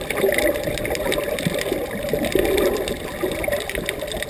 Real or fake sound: real